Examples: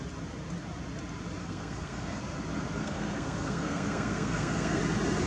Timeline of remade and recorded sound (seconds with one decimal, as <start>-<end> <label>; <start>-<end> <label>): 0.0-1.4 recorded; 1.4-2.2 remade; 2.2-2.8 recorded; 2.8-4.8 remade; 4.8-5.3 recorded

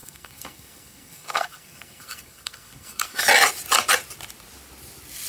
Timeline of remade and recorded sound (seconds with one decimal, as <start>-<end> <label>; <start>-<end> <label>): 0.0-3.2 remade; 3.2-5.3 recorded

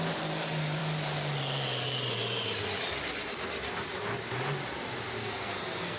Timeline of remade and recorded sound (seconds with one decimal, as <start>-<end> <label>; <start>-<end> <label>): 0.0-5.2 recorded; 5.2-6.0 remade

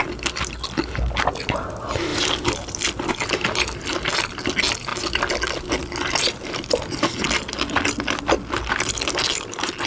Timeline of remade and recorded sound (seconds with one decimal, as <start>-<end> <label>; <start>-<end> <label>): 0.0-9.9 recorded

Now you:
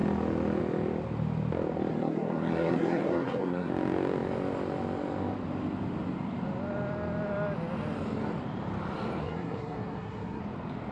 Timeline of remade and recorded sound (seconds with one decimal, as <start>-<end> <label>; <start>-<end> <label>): 0.0-1.9 recorded; 1.9-3.7 remade; 3.7-9.2 recorded; 9.2-10.4 remade; 10.4-10.9 recorded